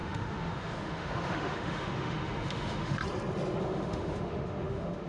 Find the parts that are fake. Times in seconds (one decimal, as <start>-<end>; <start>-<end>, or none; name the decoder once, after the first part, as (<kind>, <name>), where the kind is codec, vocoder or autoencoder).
0.0-3.0 (autoencoder, DAC-VAE); 3.6-5.1